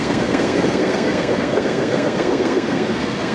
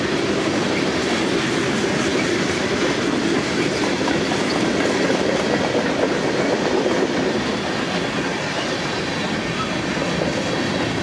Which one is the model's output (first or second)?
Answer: first